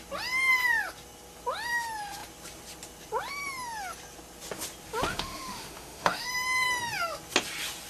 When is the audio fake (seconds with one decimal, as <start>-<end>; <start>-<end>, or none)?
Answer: 5.1-6.3